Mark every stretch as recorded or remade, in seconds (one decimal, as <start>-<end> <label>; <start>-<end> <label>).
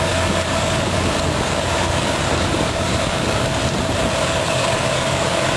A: 0.0-3.6 remade; 3.6-4.2 recorded; 4.2-5.6 remade